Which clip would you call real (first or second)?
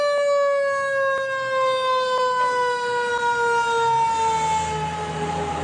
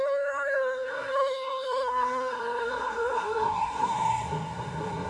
first